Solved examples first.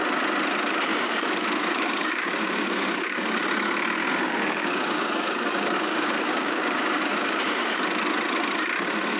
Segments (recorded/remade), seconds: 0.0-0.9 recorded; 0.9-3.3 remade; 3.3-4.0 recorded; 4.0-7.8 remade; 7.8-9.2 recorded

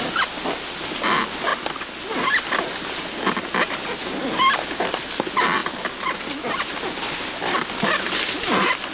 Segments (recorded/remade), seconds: 0.0-8.9 recorded

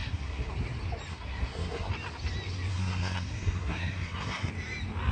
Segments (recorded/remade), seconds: 0.0-0.5 remade; 0.5-1.1 recorded; 1.1-1.9 remade; 1.9-2.7 recorded; 2.7-4.5 remade; 4.5-5.1 recorded